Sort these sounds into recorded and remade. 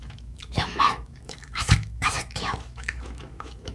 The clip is remade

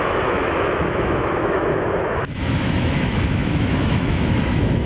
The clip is remade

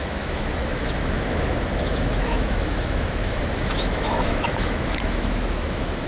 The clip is remade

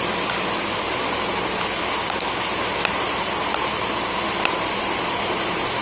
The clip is recorded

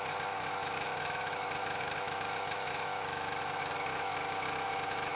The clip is remade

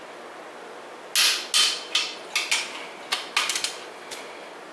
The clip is recorded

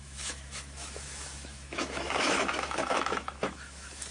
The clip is remade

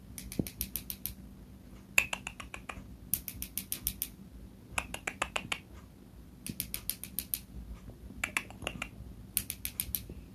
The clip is recorded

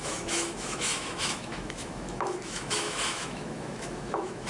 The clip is remade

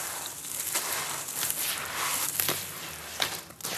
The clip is recorded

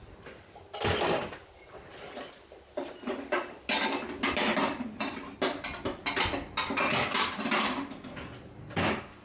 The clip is recorded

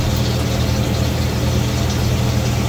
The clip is recorded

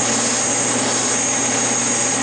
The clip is recorded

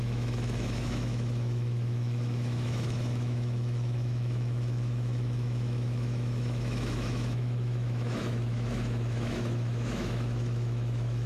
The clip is remade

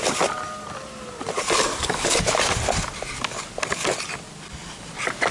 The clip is recorded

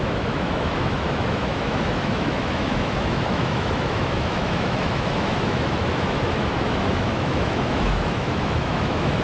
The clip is remade